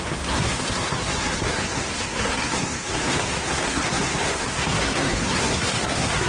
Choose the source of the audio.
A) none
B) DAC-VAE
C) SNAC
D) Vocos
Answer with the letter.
C